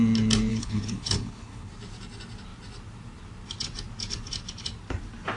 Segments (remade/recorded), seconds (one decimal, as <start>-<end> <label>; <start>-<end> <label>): 0.0-0.5 recorded; 0.5-1.7 remade; 1.7-5.4 recorded